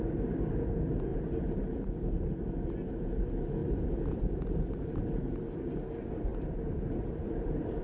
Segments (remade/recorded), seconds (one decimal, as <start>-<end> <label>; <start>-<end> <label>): 0.0-3.6 recorded; 3.6-4.9 remade; 4.9-6.3 recorded; 6.3-7.8 remade